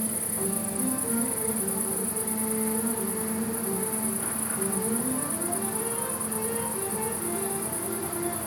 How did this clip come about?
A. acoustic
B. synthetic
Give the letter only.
A